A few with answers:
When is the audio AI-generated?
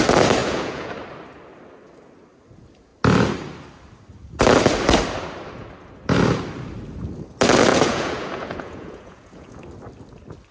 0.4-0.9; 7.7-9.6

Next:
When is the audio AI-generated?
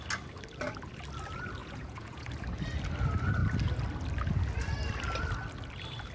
1.6-2.3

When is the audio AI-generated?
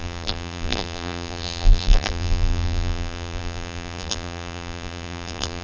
0.0-5.6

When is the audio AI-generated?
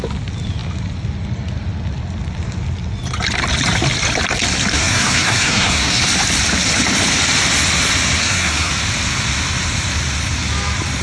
4.7-6.0; 8.2-8.7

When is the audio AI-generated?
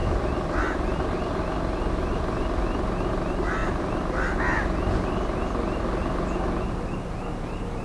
0.0-1.2; 3.6-4.3